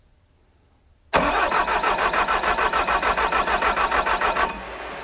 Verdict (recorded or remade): recorded